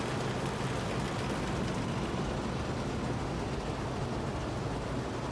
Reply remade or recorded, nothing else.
recorded